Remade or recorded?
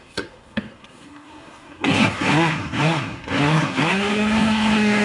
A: remade